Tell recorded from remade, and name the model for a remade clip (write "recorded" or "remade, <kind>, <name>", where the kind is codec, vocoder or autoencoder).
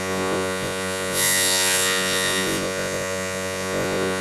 remade, vocoder, Vocos